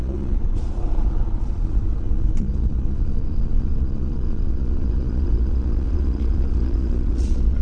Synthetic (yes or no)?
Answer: yes